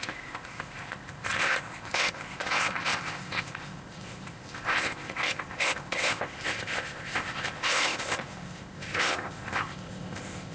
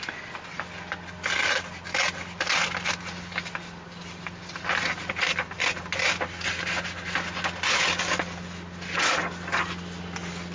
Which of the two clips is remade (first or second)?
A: first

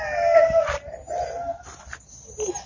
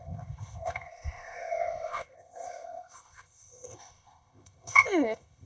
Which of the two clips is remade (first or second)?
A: second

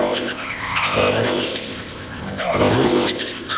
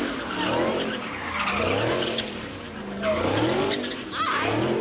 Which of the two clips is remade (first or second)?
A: first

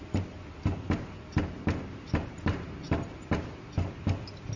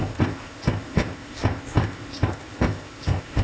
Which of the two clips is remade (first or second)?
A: second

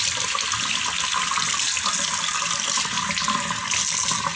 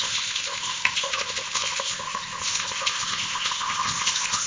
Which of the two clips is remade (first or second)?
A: second